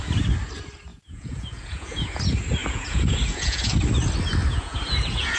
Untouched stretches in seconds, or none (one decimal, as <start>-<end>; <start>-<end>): 0.0-0.9; 2.2-2.6; 3.7-4.4